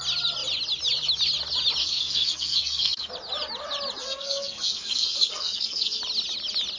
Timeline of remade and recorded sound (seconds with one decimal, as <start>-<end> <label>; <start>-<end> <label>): 0.0-1.8 recorded; 1.8-3.1 remade; 3.1-4.0 recorded; 4.0-6.0 remade; 6.0-6.8 recorded